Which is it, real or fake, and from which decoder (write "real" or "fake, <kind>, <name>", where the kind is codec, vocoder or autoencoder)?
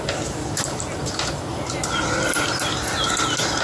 real